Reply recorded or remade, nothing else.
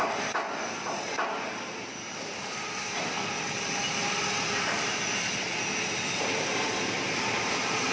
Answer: recorded